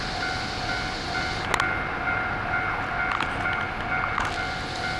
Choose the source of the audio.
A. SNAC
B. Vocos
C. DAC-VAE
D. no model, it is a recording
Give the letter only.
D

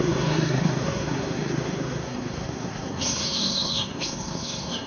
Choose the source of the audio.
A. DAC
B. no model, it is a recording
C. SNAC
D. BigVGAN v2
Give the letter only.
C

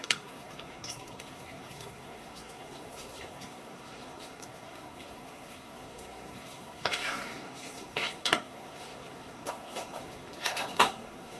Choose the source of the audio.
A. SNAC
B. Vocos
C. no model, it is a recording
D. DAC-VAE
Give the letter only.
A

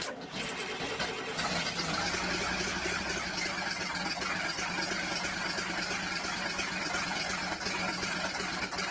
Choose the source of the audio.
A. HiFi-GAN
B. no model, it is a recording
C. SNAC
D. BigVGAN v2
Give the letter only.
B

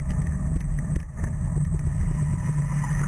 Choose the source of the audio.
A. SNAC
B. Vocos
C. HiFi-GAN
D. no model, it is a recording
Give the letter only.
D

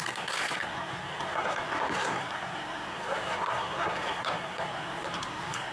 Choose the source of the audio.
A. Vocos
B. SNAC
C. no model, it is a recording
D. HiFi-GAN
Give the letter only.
B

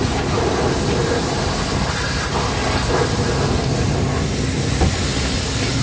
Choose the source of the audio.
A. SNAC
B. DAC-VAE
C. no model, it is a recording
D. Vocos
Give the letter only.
C